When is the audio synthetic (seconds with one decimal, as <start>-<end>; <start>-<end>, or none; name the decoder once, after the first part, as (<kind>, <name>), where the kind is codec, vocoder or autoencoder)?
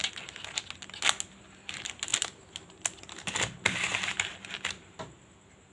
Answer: none